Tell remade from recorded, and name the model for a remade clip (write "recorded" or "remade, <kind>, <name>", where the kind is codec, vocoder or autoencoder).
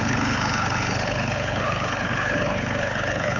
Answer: remade, codec, HILCodec